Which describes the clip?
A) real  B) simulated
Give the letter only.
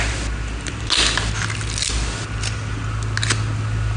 A